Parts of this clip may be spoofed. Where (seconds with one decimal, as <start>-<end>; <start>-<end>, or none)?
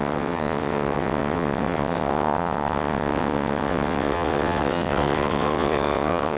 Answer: 0.0-6.4